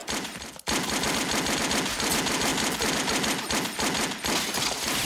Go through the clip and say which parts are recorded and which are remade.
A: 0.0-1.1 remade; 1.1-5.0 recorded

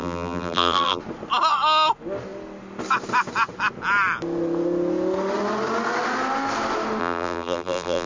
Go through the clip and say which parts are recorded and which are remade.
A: 0.0-1.0 remade; 1.0-7.0 recorded; 7.0-8.1 remade

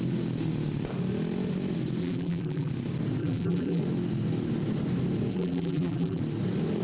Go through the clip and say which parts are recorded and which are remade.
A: 0.0-2.0 recorded; 2.0-2.7 remade; 2.7-3.2 recorded; 3.2-3.8 remade; 3.8-5.3 recorded; 5.3-6.2 remade; 6.2-6.8 recorded

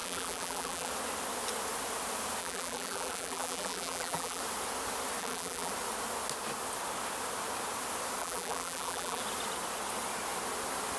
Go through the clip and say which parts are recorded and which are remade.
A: 0.0-0.9 remade; 0.9-2.4 recorded; 2.4-4.4 remade; 4.4-5.2 recorded; 5.2-5.7 remade; 5.7-8.2 recorded; 8.2-9.2 remade; 9.2-11.0 recorded